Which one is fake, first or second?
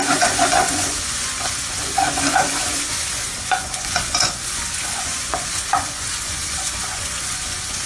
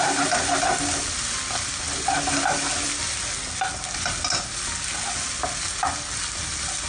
first